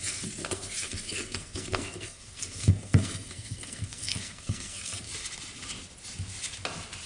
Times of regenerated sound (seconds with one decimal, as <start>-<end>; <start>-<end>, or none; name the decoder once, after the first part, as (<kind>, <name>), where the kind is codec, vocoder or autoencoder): 0.0-5.1 (codec, SNAC)